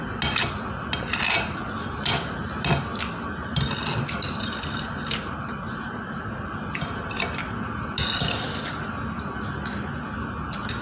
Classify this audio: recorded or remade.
recorded